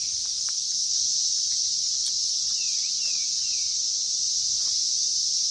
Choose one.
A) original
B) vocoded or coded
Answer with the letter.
A